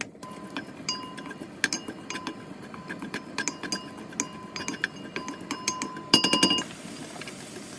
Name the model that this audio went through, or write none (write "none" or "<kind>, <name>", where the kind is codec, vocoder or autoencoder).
none